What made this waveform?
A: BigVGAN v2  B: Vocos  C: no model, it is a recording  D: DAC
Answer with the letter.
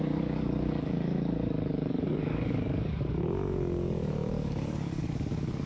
D